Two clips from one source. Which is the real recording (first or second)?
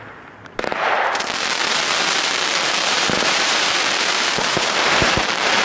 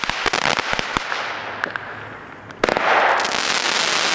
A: second